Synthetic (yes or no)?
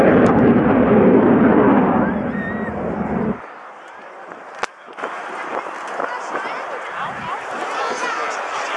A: no